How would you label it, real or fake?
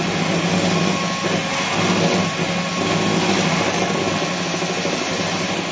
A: real